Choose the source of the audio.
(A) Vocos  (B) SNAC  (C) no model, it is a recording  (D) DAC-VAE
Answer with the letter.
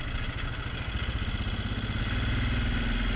C